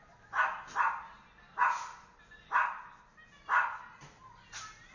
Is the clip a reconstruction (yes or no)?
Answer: no